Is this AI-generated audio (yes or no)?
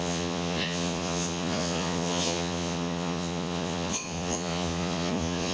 yes